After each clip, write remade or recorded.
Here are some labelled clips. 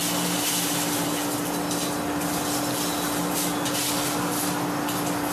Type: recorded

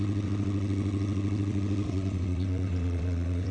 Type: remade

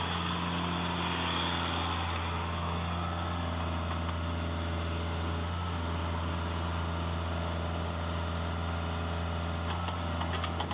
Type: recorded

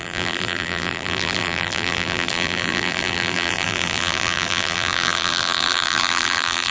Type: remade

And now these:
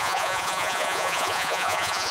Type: remade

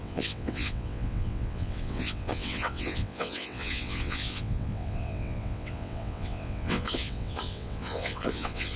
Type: remade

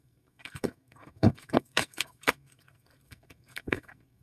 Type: remade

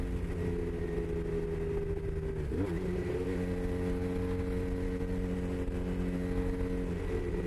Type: recorded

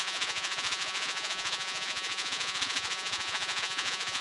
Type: remade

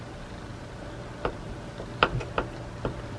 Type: recorded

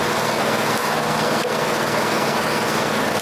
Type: remade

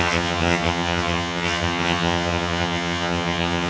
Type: remade